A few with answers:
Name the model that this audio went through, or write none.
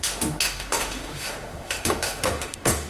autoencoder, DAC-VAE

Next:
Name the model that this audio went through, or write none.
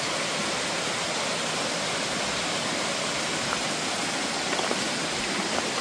none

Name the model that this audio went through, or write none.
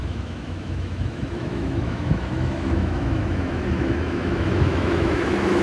autoencoder, DAC-VAE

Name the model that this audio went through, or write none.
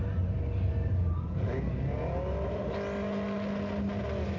none